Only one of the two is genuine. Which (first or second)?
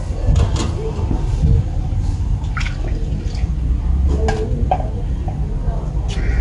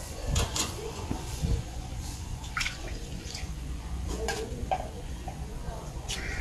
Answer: first